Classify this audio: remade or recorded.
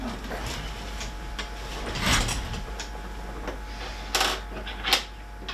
recorded